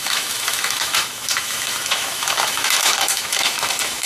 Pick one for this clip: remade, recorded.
remade